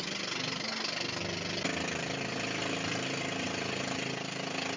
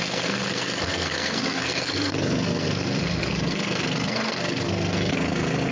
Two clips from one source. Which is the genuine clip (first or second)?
first